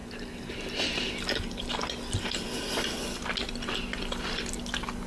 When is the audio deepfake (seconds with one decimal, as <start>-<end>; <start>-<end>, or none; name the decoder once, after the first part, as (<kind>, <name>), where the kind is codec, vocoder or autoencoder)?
none